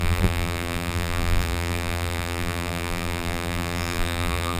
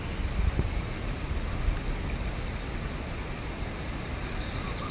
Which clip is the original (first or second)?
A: second